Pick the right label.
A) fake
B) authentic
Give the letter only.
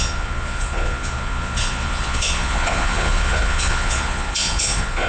A